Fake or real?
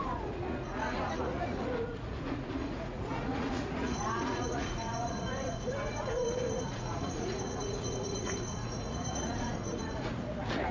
fake